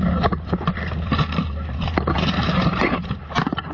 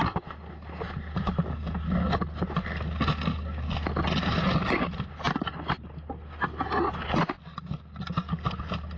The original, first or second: second